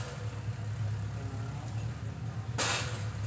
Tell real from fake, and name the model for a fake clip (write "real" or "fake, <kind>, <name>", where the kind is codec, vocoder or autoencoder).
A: real